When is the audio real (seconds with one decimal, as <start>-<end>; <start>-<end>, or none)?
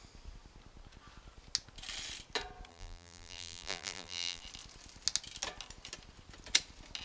0.0-2.7; 4.4-7.0